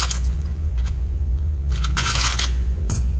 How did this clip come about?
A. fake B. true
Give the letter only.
A